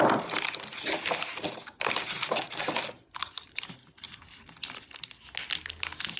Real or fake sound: real